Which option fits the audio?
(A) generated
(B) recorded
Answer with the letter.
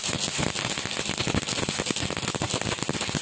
B